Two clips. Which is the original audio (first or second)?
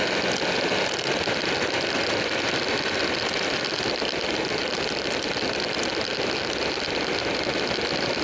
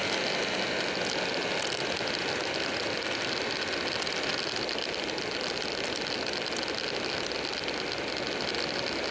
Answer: second